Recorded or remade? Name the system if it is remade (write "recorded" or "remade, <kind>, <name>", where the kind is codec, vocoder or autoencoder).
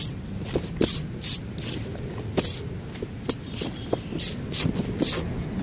recorded